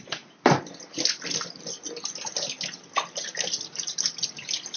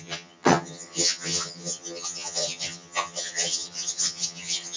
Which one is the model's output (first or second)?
second